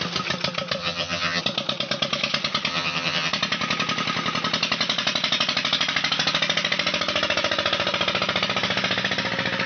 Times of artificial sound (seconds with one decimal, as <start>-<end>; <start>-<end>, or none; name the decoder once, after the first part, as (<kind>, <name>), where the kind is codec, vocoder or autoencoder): 0.8-1.4 (vocoder, HiFi-GAN); 2.7-3.3

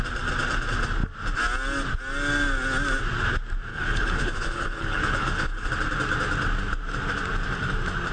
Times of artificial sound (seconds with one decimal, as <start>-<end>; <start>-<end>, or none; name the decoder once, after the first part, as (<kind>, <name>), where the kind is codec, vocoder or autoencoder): 3.7-5.7 (codec, HILCodec)

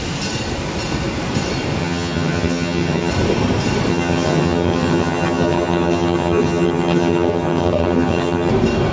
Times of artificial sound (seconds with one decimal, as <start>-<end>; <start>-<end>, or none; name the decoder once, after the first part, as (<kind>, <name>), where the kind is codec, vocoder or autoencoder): 1.8-3.1 (vocoder, HiFi-GAN); 3.9-8.5

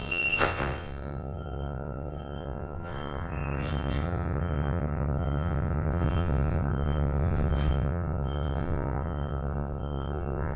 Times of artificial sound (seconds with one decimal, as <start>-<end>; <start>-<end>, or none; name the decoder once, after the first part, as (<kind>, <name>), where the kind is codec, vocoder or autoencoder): 0.0-10.6 (vocoder, WaveNeXt)

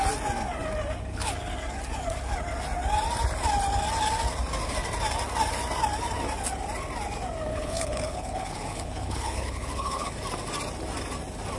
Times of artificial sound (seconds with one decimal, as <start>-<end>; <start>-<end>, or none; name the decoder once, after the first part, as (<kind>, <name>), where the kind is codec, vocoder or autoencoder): 7.5-10.1 (codec, HILCodec)